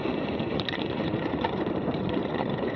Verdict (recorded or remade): remade